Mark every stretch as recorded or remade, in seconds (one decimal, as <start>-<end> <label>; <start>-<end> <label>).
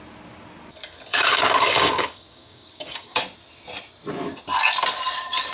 0.0-1.1 recorded; 1.1-3.2 remade; 3.2-5.5 recorded